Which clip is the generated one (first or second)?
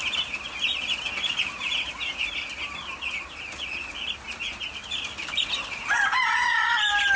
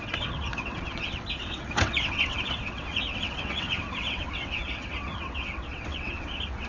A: second